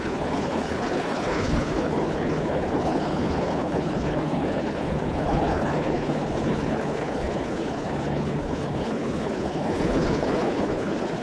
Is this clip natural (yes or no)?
no